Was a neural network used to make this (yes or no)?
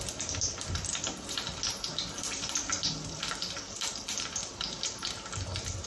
no